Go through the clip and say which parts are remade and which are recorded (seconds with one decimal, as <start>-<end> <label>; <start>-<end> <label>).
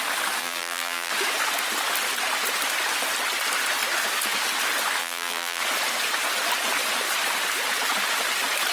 0.0-0.4 recorded; 0.4-1.1 remade; 1.1-5.0 recorded; 5.0-5.6 remade; 5.6-8.7 recorded